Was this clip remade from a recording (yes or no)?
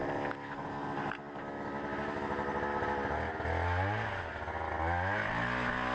no